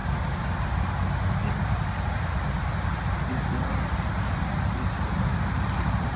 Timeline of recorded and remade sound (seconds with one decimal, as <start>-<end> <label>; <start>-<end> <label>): 0.0-6.2 recorded